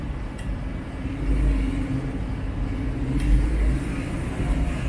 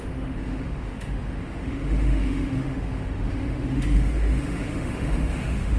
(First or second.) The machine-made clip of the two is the second